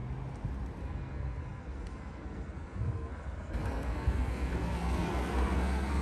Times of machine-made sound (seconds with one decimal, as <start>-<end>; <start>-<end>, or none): 0.8-6.0